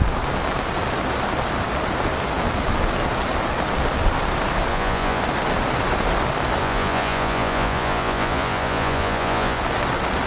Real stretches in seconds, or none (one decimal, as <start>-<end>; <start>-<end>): 0.0-4.7; 5.2-6.6; 9.6-10.3